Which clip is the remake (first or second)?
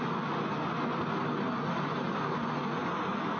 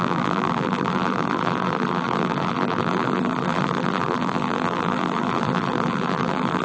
second